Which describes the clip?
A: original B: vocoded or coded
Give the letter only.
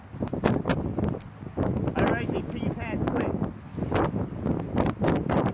A